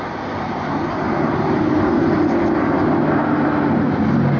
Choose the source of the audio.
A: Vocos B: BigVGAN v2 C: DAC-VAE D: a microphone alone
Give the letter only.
D